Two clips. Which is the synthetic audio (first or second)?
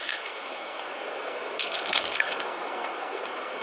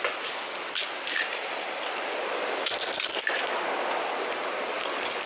first